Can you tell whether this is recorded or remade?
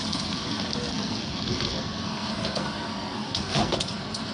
remade